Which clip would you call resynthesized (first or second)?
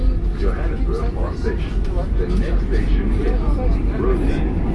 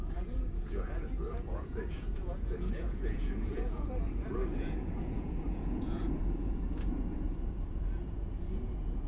second